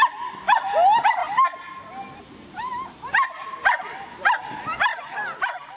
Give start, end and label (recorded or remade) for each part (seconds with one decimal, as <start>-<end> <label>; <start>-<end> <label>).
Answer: 0.0-5.8 recorded